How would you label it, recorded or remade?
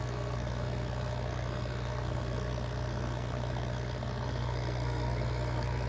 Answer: remade